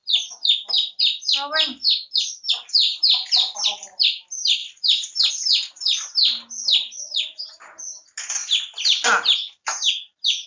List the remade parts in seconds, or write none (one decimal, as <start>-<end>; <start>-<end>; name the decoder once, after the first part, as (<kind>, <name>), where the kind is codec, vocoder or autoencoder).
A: 0.0-1.0 (vocoder, BigVGAN v2); 1.8-2.5; 4.6-5.3